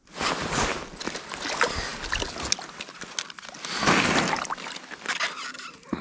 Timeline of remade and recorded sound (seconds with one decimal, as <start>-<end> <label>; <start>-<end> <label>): 0.0-0.7 recorded; 0.7-1.2 remade; 1.2-6.0 recorded